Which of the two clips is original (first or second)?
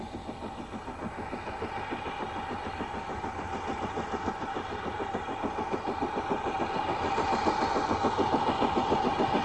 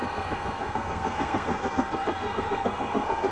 first